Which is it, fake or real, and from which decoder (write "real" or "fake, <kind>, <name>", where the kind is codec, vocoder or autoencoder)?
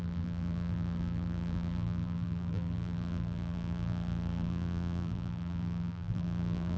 fake, vocoder, BigVGAN v2